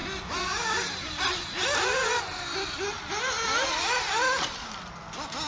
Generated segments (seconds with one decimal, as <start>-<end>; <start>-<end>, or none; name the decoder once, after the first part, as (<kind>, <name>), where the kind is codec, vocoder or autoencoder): none